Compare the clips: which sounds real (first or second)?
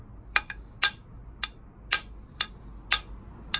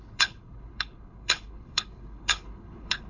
first